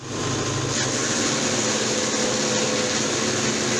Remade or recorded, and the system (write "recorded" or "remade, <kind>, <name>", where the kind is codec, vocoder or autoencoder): recorded